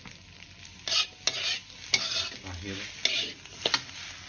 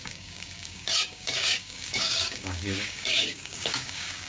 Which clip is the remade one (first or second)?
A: second